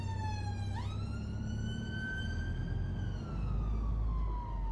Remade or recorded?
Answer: recorded